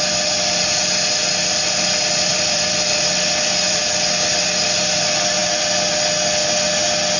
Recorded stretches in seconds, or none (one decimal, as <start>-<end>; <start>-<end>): 0.0-2.3; 4.8-7.2